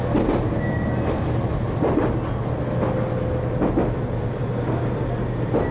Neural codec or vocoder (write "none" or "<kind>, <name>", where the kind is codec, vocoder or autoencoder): none